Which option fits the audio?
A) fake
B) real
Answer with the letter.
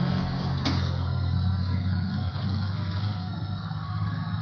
A